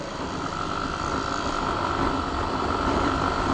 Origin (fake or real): real